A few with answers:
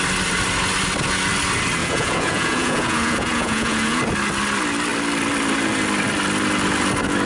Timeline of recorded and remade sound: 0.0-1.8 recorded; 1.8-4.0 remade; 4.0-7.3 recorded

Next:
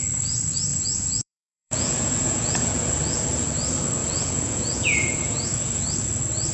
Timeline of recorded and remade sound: 0.0-0.7 recorded; 0.7-2.9 remade; 2.9-4.0 recorded; 4.0-5.8 remade; 5.8-6.5 recorded